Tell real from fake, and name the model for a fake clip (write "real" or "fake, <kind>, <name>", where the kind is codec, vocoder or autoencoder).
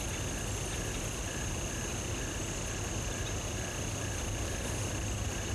real